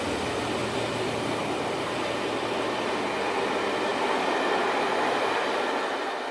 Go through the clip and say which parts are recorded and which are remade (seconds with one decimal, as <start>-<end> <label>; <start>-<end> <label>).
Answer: 0.0-6.3 recorded